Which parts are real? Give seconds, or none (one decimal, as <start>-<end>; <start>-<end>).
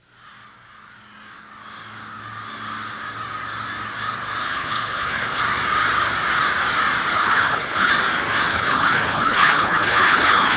0.0-4.4; 5.4-7.1; 7.9-8.5